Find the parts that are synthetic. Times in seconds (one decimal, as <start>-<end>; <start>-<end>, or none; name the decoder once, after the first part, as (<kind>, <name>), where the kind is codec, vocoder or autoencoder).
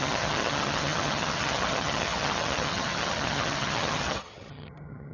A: 0.0-5.1 (vocoder, HiFi-GAN)